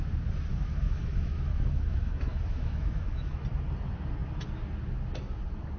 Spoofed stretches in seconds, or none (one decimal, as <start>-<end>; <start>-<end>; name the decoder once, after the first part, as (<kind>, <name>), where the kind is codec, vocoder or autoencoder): 0.5-3.4 (autoencoder, DAC-VAE)